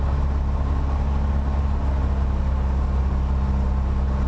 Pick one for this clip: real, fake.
real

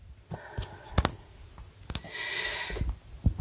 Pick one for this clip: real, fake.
real